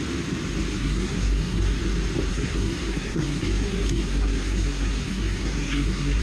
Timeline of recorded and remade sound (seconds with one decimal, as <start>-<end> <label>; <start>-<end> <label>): 0.0-0.7 recorded; 0.7-1.8 remade; 1.8-2.3 recorded; 2.3-6.2 remade